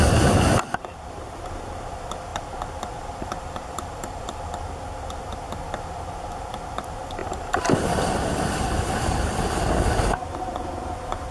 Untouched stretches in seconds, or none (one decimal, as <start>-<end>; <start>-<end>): 0.0-2.3; 4.7-7.2; 9.6-11.3